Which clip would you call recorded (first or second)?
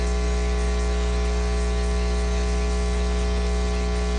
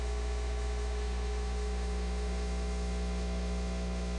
first